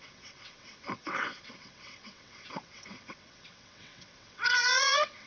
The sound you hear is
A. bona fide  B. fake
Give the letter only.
B